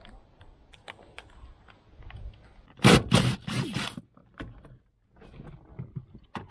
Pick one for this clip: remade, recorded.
recorded